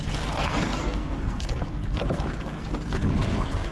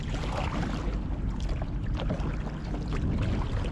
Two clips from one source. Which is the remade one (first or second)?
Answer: first